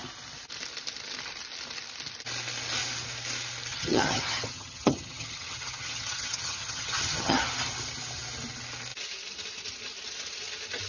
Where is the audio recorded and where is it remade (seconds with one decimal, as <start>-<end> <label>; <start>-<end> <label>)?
0.0-3.7 recorded; 3.7-7.4 remade; 7.4-10.9 recorded